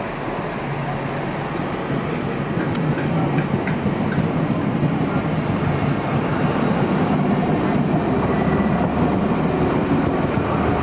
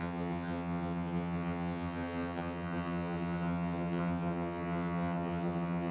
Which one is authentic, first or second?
first